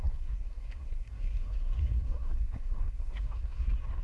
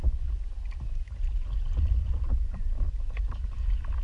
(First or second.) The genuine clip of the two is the second